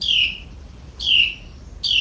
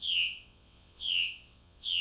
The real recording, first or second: first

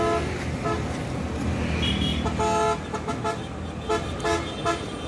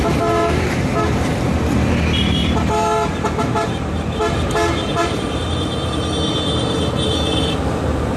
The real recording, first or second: first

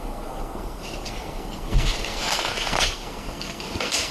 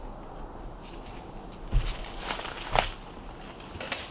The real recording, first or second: second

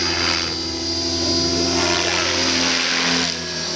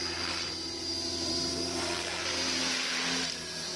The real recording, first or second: first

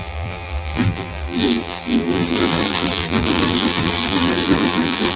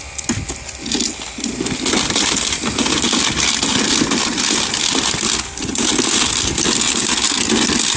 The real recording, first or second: second